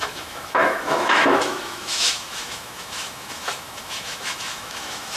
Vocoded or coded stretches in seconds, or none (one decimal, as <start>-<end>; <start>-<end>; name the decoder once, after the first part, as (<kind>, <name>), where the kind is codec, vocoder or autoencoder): 0.0-5.2 (autoencoder, DAC-VAE)